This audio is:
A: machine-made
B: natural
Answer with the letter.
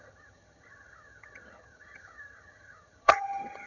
A